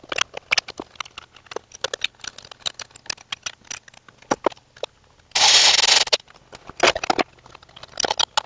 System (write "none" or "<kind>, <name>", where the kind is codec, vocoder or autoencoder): none